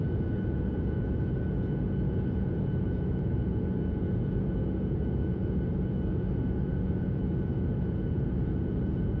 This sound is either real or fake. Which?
fake